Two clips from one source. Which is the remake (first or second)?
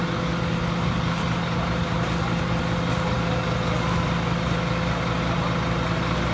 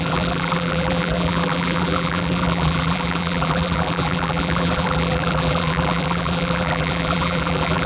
second